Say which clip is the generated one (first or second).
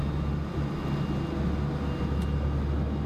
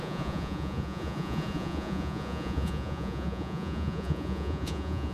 second